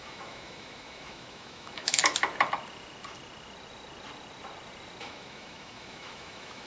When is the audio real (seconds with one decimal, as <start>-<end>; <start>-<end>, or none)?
2.0-5.0